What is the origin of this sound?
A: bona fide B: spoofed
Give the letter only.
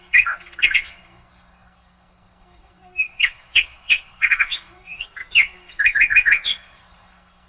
B